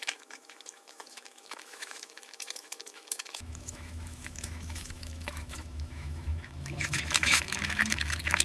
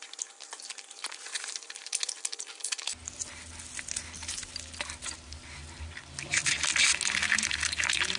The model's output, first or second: first